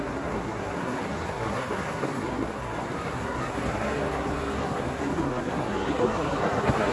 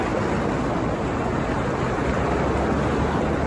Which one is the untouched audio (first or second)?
second